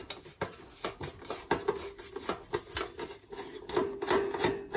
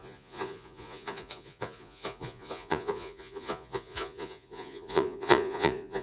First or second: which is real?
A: first